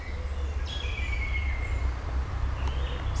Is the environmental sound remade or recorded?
recorded